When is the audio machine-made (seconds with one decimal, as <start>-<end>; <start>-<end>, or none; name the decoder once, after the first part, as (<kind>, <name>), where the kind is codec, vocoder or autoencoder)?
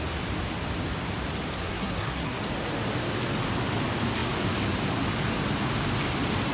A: 1.6-2.4 (codec, SNAC)